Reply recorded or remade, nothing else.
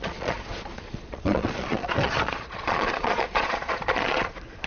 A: remade